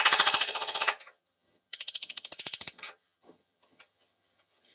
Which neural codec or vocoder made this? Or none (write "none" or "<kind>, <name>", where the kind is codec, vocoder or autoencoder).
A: vocoder, HiFi-GAN